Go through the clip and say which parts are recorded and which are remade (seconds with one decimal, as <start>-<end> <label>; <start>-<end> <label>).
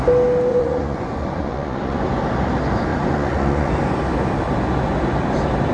0.0-0.5 recorded; 0.5-2.0 remade; 2.0-2.9 recorded; 2.9-3.7 remade; 3.7-5.7 recorded